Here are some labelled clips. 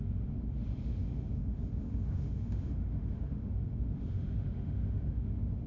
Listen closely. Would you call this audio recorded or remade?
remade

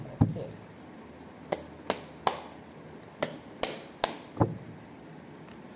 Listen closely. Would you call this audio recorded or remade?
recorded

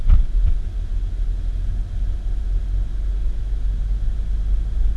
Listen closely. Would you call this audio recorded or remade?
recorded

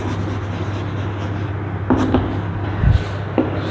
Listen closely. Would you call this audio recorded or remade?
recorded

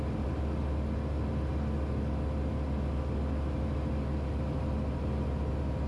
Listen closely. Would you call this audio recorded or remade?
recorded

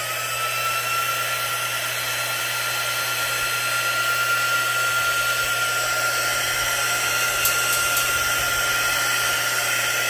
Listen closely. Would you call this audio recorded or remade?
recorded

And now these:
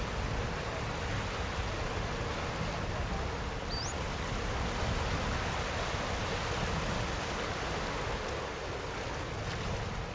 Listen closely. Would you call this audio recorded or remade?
recorded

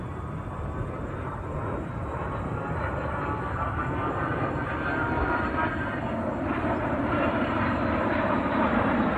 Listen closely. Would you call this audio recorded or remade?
remade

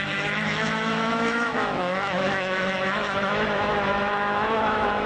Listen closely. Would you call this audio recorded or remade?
remade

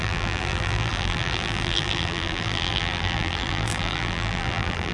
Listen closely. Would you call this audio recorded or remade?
remade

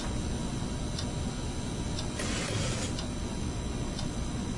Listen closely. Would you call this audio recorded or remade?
recorded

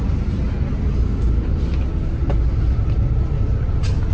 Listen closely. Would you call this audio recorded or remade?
recorded